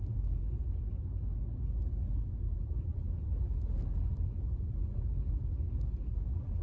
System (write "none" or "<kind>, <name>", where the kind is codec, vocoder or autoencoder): none